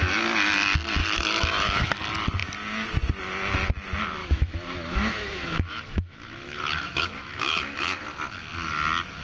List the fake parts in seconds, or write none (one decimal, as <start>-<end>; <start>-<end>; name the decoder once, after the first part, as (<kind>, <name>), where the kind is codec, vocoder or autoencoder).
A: 1.0-1.9 (autoencoder, DAC-VAE); 4.2-8.0